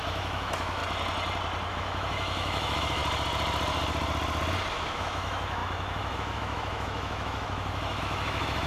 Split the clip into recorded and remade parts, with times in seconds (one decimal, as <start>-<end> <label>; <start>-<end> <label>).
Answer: 0.0-0.8 remade; 0.8-1.7 recorded; 1.7-3.0 remade; 3.0-4.7 recorded; 4.7-8.7 remade